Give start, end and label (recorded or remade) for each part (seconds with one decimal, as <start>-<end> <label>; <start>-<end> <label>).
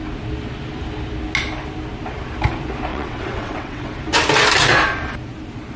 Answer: 0.0-2.9 recorded; 2.9-3.9 remade; 3.9-5.8 recorded